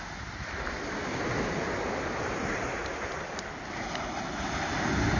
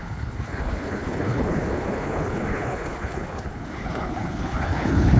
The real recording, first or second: first